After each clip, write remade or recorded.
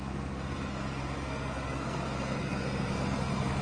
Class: remade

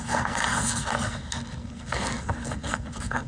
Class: remade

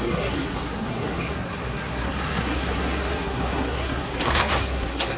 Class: remade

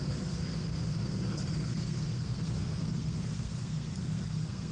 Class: remade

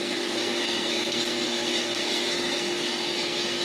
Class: remade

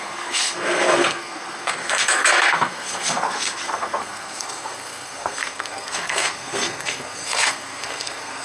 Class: remade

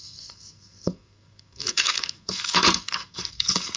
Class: remade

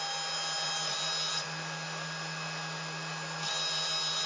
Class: recorded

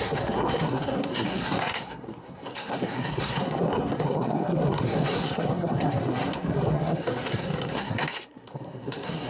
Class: remade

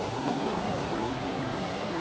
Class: remade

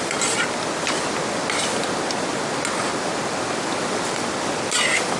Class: recorded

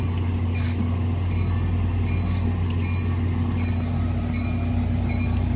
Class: recorded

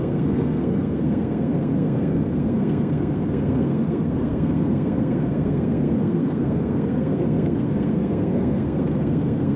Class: remade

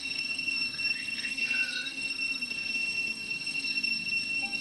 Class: remade